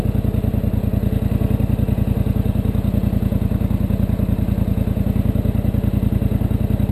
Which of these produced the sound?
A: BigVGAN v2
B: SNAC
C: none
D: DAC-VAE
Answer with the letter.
C